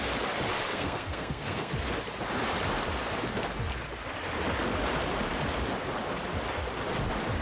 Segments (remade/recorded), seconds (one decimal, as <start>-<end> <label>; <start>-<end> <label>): 0.0-0.7 recorded; 0.7-1.7 remade; 1.7-7.4 recorded